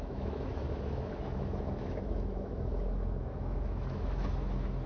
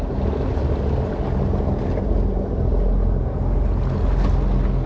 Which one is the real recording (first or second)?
second